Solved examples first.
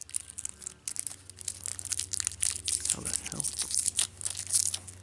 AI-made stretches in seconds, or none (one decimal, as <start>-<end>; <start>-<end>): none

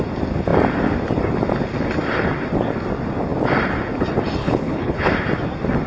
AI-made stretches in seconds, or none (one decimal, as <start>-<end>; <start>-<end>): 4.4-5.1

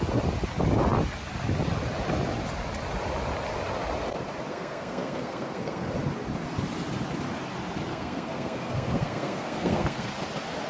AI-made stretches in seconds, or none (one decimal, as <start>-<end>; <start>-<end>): 4.5-5.9; 7.9-10.1